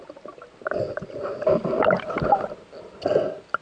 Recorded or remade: recorded